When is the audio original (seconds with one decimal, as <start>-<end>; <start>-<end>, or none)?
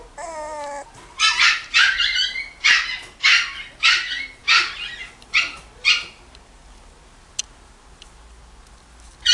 0.0-9.3